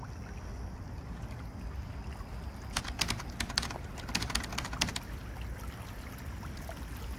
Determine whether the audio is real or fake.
real